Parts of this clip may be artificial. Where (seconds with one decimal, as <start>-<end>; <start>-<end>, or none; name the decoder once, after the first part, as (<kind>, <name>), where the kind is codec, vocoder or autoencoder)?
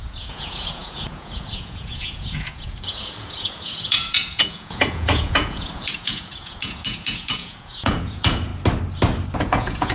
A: 0.0-8.5 (vocoder, Vocos); 9.4-9.9